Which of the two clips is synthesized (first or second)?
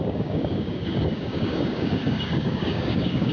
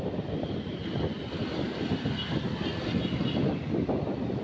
first